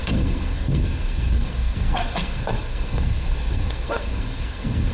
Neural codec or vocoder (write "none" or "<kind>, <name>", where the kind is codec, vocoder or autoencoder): codec, SNAC